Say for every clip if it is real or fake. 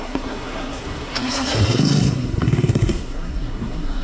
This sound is fake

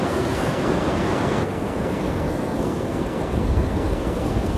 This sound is fake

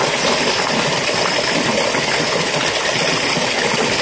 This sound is real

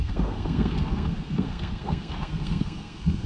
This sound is fake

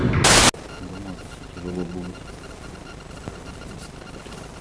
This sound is real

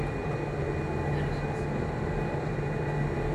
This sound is real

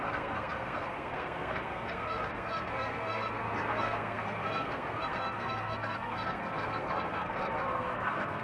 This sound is fake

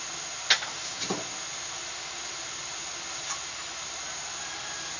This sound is real